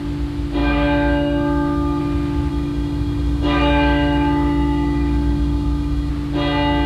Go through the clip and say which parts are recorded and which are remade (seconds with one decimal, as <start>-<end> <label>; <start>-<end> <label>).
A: 0.0-0.6 recorded; 0.6-2.0 remade; 2.0-2.5 recorded; 2.5-6.1 remade; 6.1-6.9 recorded